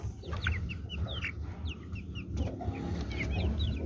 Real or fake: real